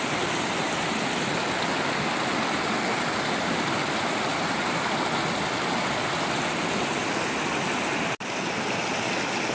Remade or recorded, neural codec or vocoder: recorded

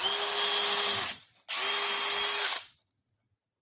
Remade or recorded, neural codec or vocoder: recorded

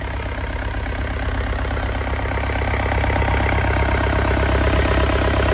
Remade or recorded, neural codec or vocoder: recorded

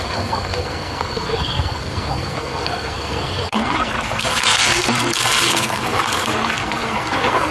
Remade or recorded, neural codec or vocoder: remade, codec, SNAC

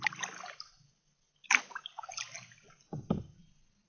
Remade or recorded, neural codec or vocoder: recorded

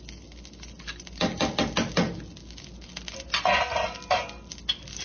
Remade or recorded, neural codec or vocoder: recorded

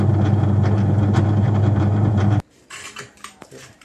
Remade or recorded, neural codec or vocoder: remade, vocoder, BigVGAN v2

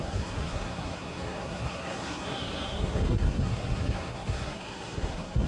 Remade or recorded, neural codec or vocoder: remade, codec, SNAC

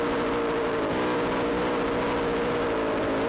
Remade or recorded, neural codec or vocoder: recorded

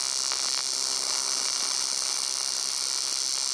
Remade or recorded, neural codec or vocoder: recorded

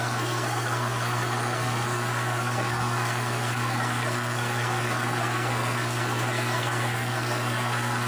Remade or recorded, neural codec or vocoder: remade, codec, SNAC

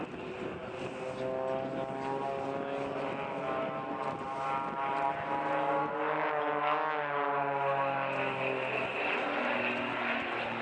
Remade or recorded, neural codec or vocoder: recorded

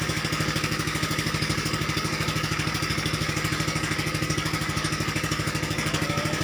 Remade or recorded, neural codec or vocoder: remade, codec, DAC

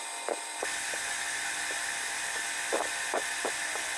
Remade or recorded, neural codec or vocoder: recorded